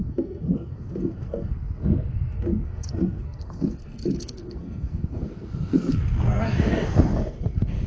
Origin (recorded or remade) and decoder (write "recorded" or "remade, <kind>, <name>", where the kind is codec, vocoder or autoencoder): remade, codec, SNAC